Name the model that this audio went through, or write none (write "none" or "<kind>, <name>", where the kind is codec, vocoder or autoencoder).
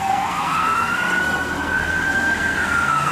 codec, SNAC